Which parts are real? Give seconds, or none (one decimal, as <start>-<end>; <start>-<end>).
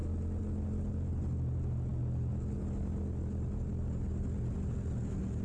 0.0-5.4